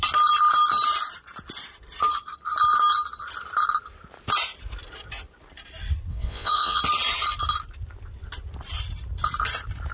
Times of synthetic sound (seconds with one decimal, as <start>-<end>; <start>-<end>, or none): 6.1-6.8